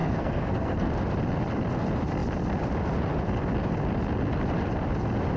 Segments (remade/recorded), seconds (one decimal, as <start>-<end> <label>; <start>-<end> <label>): 0.0-0.9 remade; 0.9-5.4 recorded